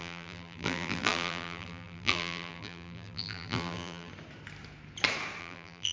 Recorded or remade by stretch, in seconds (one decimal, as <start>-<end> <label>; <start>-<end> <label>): 0.0-4.1 remade; 4.1-5.4 recorded; 5.4-5.9 remade